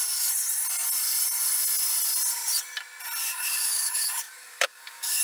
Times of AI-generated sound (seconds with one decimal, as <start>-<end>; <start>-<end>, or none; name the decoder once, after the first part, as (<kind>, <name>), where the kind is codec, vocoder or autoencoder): 3.2-5.2 (codec, DAC)